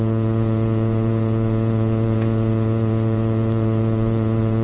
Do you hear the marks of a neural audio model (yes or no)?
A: yes